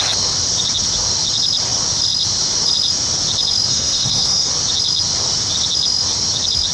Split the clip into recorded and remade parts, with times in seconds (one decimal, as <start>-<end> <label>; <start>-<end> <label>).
0.0-3.7 recorded; 3.7-4.5 remade; 4.5-6.7 recorded